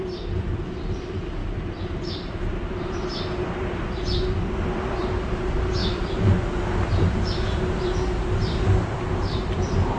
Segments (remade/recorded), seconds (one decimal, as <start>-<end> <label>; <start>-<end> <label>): 0.0-5.8 remade; 5.8-6.9 recorded; 6.9-10.0 remade